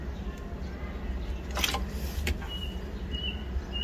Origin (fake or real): real